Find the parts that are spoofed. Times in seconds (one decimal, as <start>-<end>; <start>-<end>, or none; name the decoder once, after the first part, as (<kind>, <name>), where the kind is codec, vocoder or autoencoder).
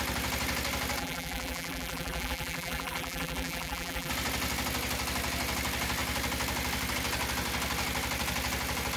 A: 1.0-4.1 (vocoder, BigVGAN v2)